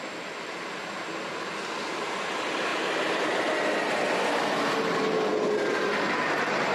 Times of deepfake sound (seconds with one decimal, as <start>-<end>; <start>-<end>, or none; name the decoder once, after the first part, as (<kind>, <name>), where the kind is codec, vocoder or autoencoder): none